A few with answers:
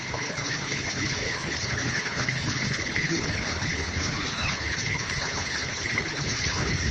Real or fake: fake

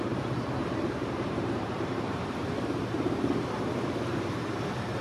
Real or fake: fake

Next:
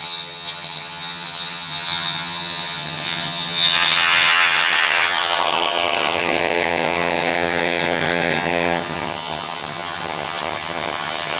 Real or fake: fake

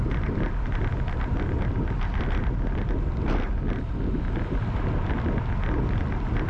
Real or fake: real